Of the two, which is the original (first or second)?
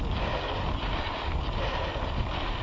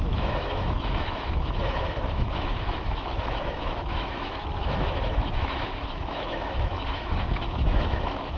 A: first